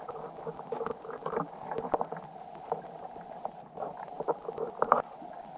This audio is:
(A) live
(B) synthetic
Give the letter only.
A